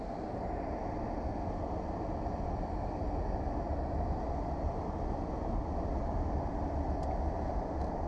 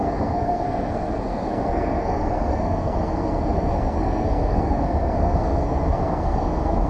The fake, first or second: second